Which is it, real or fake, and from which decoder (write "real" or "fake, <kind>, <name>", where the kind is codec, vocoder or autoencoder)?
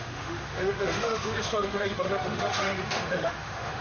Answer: fake, autoencoder, DAC-VAE